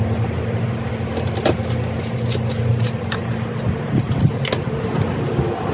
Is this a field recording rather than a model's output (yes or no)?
yes